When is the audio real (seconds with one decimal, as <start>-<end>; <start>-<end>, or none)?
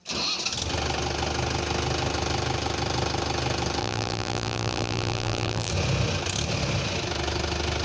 0.0-3.8; 5.7-7.8